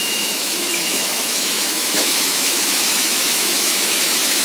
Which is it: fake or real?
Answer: fake